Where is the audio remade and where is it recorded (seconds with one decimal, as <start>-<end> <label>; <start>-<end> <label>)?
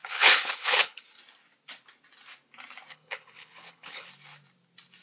0.0-1.0 remade; 1.0-2.9 recorded; 2.9-4.1 remade; 4.1-5.0 recorded